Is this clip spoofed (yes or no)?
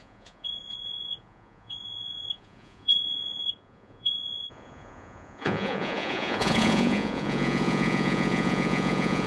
yes